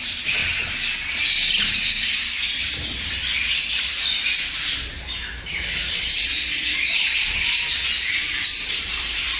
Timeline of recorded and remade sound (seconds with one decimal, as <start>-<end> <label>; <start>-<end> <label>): 0.0-0.4 remade; 0.4-3.1 recorded; 3.1-6.3 remade; 6.3-8.0 recorded; 8.0-9.4 remade